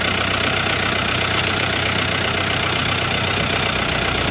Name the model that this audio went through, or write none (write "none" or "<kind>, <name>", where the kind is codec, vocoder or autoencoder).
none